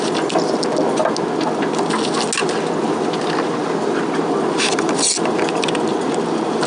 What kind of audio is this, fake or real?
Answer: real